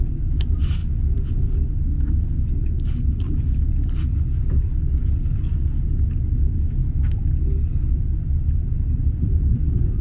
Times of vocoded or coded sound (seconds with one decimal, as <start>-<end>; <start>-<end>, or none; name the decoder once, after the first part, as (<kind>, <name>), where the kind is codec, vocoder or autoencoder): 0.0-0.8 (vocoder, BigVGAN v2); 4.6-5.0; 5.5-6.8; 7.9-10.0